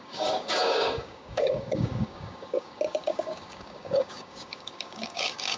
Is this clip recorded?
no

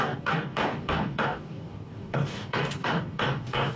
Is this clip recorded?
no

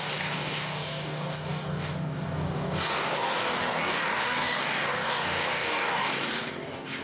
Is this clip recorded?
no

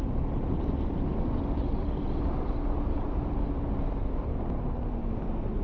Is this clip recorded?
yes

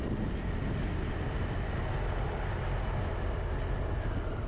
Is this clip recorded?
yes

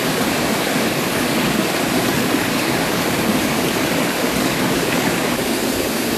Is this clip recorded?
no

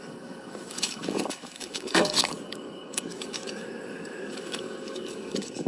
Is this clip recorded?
no